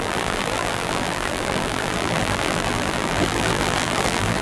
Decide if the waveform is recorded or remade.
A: remade